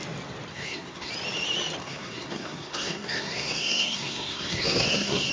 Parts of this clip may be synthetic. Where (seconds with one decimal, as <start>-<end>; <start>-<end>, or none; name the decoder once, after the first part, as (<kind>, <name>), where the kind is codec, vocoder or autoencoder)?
0.5-1.1 (codec, SNAC); 1.8-5.3